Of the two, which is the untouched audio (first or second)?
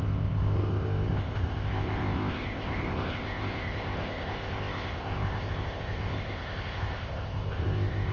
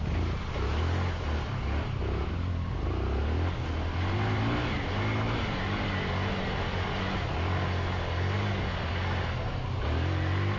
second